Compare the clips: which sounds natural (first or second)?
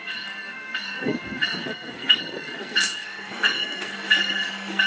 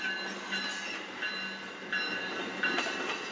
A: second